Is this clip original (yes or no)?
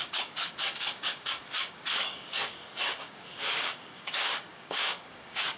no